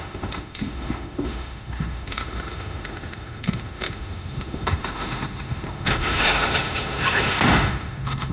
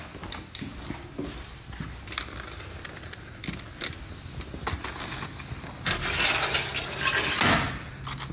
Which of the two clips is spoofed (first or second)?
first